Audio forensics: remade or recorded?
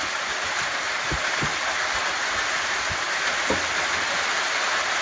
recorded